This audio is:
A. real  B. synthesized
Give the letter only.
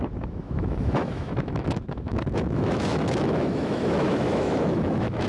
B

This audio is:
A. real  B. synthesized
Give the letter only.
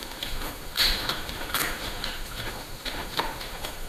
B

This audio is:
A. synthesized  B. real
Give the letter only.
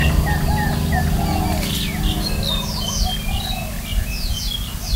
B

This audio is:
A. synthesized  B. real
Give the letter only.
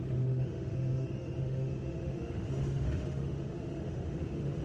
A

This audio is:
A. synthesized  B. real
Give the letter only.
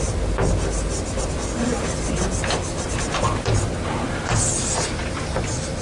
B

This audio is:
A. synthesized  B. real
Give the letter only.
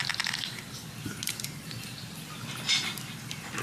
B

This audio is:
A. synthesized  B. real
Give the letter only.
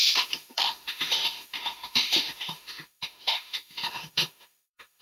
A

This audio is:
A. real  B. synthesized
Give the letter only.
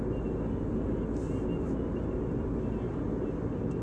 A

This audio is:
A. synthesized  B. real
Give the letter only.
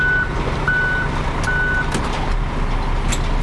B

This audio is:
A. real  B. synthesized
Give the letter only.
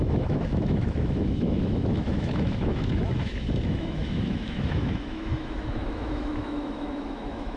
B